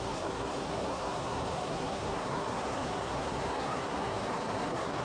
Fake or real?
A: fake